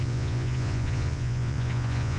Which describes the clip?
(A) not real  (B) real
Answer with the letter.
A